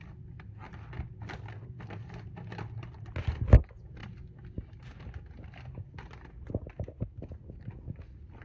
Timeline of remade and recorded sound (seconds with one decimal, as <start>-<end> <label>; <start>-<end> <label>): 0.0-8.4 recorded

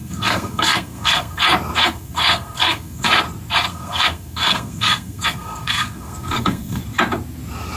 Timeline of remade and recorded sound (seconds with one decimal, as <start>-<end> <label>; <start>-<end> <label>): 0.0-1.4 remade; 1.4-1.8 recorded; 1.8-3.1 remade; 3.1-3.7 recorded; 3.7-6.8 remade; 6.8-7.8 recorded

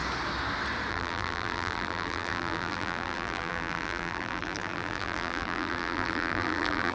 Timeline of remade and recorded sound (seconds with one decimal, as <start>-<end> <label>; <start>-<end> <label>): 0.0-0.9 recorded; 0.9-6.9 remade

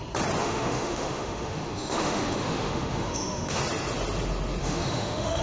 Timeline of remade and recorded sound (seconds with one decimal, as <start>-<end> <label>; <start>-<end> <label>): 0.0-0.4 recorded; 0.4-3.6 remade; 3.6-4.6 recorded; 4.6-5.4 remade

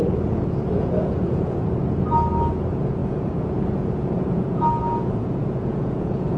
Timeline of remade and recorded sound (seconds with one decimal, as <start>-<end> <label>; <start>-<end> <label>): 0.0-1.8 remade; 1.8-2.5 recorded; 2.5-6.4 remade

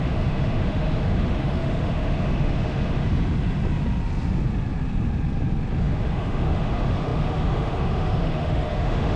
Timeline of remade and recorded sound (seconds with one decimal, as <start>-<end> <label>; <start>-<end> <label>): 0.0-3.0 remade; 3.0-5.8 recorded; 5.8-9.2 remade